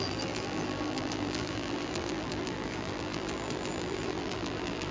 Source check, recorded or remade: remade